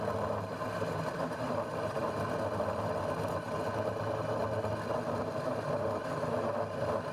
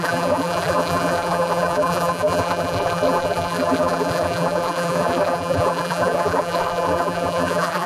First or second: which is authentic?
first